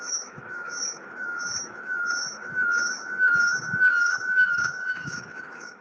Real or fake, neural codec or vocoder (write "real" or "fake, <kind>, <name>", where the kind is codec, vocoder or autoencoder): fake, autoencoder, DAC-VAE